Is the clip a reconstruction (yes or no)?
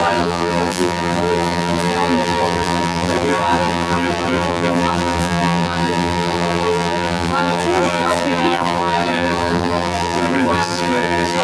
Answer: yes